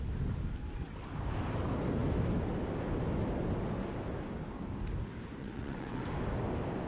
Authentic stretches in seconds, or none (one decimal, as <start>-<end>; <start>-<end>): 0.0-5.4; 6.0-6.9